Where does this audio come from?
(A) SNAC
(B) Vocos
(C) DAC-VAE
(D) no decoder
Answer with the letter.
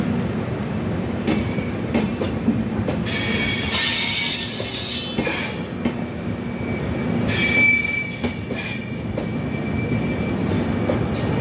D